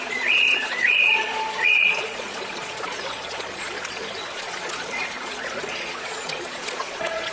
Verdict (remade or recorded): remade